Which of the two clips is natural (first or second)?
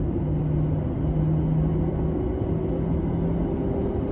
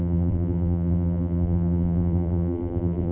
first